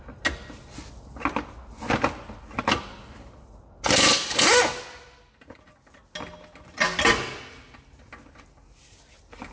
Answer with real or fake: real